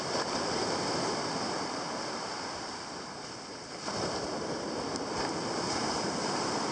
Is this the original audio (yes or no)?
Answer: yes